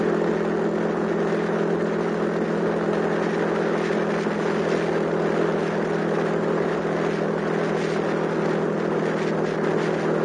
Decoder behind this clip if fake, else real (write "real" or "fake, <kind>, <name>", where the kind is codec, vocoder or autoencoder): real